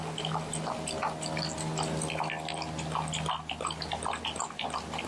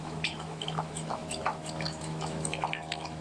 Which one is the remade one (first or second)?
second